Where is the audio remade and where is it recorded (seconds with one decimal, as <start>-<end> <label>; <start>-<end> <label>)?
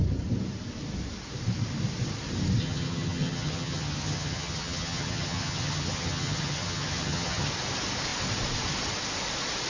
0.0-2.6 recorded; 2.6-7.5 remade; 7.5-9.7 recorded